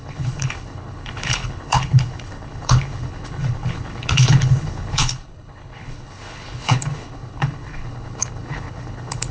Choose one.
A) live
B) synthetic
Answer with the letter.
B